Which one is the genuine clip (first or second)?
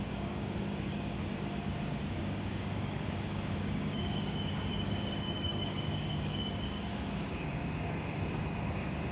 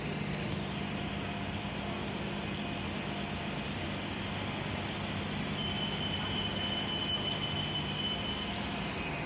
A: second